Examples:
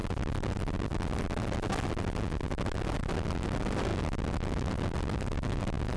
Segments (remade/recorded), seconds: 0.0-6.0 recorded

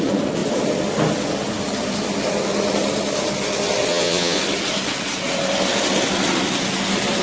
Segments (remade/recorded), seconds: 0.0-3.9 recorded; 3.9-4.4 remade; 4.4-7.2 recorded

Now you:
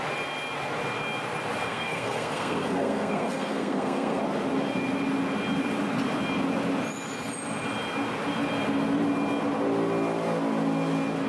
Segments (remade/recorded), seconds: 0.0-1.6 recorded; 1.6-4.2 remade; 4.2-11.3 recorded

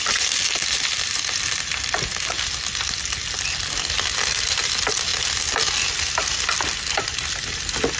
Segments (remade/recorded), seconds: 0.0-8.0 recorded